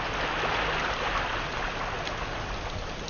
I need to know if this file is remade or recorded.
recorded